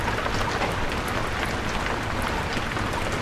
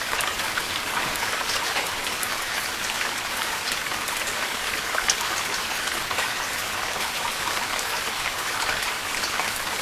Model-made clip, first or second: second